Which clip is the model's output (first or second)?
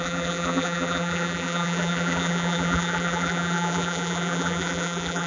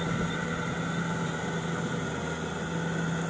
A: first